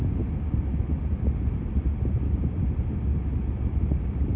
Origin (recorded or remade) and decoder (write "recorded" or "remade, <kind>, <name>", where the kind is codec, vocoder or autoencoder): recorded